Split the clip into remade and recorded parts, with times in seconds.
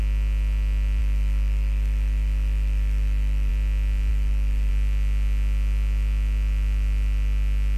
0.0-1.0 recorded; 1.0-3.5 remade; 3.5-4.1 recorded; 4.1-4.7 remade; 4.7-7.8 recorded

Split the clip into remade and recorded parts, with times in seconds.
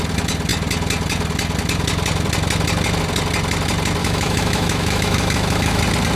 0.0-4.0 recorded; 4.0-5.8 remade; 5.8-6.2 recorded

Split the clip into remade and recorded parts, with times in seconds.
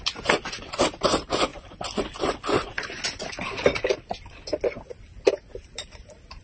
0.0-1.5 remade; 1.5-5.3 recorded; 5.3-6.4 remade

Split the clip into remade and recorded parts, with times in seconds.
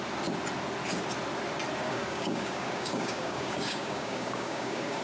0.0-1.8 recorded; 1.8-5.0 remade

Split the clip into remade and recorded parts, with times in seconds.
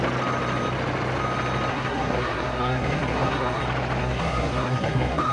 0.0-1.7 recorded; 1.7-3.6 remade; 3.6-4.0 recorded; 4.0-5.3 remade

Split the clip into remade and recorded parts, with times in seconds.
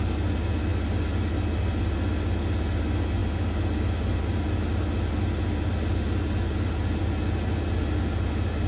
0.0-8.7 recorded